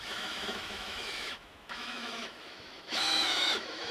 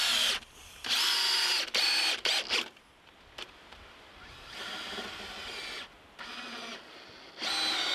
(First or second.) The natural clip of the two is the second